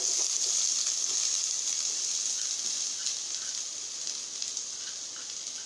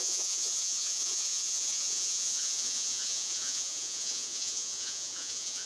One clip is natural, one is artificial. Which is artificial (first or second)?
second